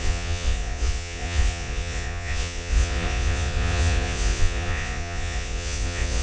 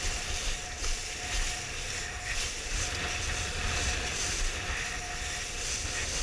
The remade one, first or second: first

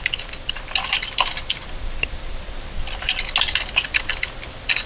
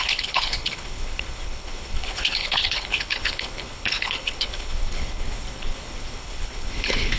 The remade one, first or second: second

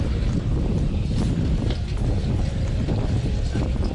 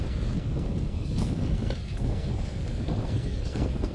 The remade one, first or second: second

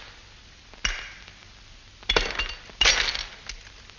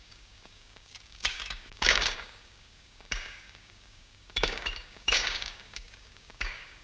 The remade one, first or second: second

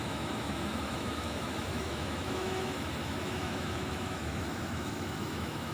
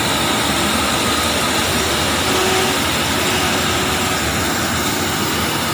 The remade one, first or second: first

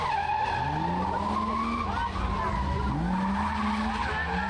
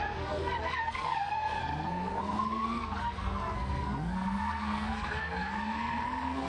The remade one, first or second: second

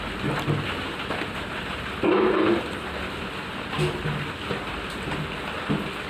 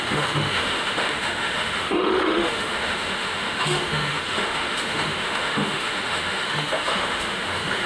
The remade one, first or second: second